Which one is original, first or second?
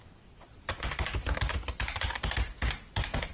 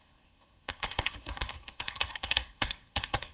first